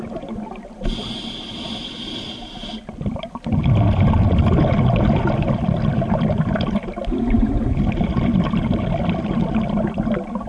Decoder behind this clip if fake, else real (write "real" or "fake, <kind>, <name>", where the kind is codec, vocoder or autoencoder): real